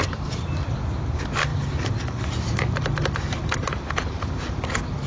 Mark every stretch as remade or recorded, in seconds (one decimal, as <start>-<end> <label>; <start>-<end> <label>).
0.0-1.5 recorded; 1.5-4.5 remade; 4.5-5.1 recorded